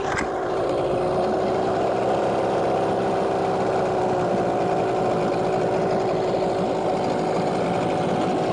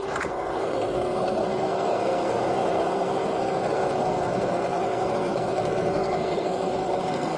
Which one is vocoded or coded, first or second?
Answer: second